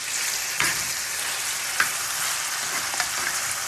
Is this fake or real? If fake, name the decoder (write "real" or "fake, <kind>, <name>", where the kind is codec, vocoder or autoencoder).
real